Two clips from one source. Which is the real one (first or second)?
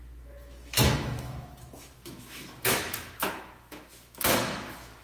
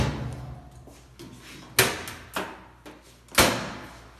second